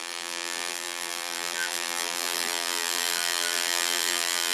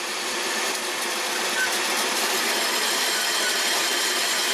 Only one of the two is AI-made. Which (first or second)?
first